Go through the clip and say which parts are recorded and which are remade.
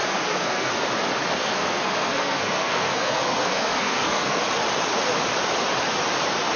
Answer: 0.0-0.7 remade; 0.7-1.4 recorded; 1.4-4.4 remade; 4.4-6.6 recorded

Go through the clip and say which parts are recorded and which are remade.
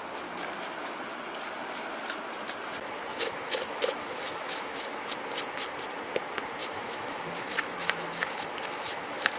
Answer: 0.0-3.1 recorded; 3.1-5.1 remade; 5.1-6.6 recorded; 6.6-9.4 remade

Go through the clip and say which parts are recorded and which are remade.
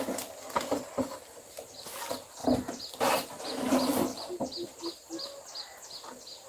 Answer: 0.0-6.5 recorded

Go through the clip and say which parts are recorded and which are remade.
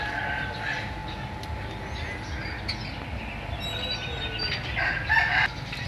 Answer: 0.0-5.9 recorded